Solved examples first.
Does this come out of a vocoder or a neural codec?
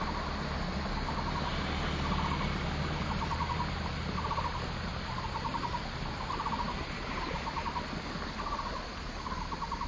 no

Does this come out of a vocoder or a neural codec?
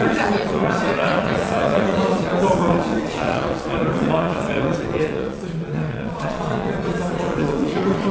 yes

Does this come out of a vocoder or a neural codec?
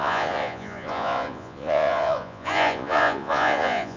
yes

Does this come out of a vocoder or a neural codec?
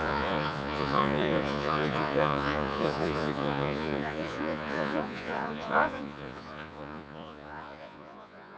yes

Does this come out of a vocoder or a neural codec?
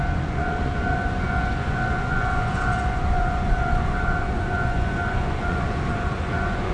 yes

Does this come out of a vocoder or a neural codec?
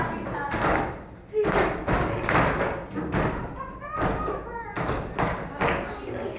no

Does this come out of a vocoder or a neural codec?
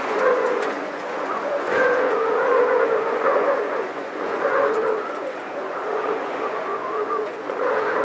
yes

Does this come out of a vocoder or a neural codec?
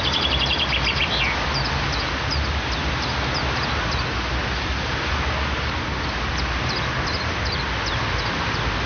no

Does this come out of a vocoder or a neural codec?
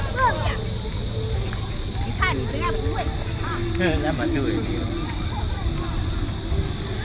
no